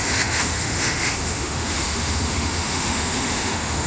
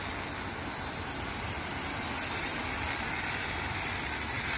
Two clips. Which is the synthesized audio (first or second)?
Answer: first